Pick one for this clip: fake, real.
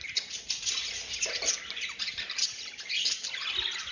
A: fake